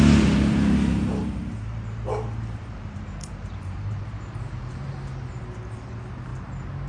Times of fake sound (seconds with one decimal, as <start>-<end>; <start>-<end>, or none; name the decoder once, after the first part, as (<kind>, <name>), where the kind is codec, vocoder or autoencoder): 1.2-4.9 (vocoder, BigVGAN v2)